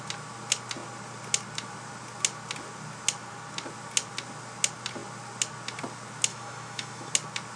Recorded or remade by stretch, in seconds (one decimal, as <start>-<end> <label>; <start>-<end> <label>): 0.0-6.3 recorded; 6.3-7.1 remade; 7.1-7.6 recorded